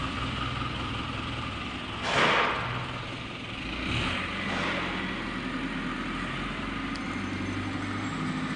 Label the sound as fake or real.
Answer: real